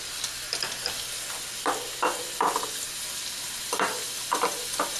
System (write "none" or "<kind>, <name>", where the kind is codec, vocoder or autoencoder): none